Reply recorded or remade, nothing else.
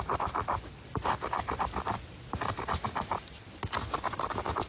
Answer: remade